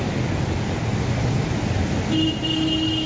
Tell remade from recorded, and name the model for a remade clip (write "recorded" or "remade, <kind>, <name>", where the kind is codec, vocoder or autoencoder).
recorded